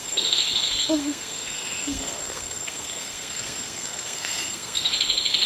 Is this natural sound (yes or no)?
no